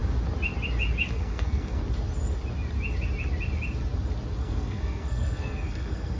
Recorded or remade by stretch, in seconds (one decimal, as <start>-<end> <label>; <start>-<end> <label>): 0.0-1.1 recorded; 1.1-1.8 remade; 1.8-4.4 recorded; 4.4-6.2 remade